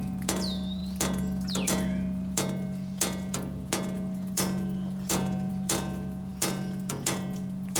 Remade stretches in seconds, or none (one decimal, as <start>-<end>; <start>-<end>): 0.0-7.8